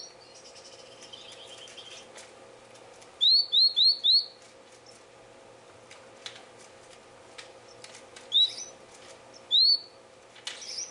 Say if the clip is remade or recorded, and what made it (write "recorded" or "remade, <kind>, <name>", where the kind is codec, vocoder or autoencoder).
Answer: recorded